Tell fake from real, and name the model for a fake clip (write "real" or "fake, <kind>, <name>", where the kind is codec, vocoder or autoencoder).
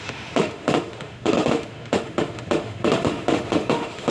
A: fake, autoencoder, DAC-VAE